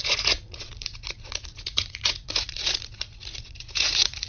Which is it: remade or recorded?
remade